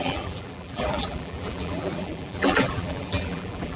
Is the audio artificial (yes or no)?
yes